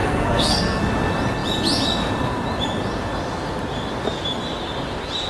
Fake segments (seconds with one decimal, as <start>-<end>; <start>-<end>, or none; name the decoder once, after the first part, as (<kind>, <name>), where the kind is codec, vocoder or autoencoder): 0.0-0.8 (codec, SNAC)